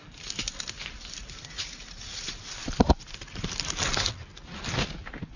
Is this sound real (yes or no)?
yes